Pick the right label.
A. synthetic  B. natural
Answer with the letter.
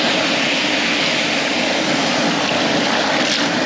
B